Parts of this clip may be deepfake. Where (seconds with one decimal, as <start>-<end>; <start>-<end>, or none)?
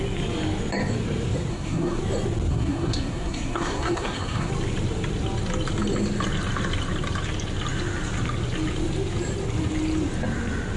1.5-2.0; 2.5-4.5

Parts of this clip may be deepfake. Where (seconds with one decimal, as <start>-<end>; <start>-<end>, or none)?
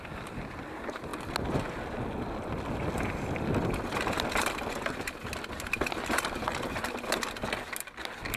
none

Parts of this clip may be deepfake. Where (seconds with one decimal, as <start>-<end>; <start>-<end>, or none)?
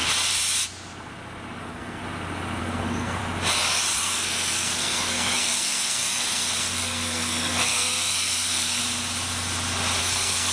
1.6-2.0; 2.6-3.2; 4.0-8.8; 10.0-10.5